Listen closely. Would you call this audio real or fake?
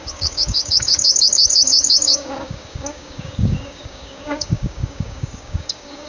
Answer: fake